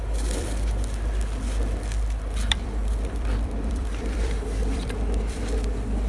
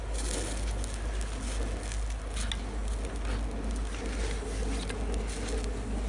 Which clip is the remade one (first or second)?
first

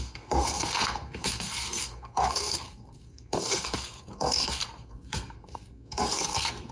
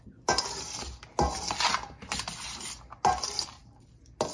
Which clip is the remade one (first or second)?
first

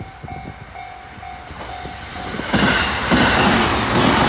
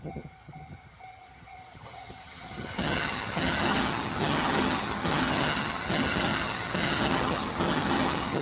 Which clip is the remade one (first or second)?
second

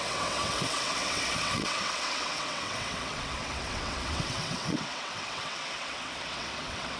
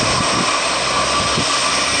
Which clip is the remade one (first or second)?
first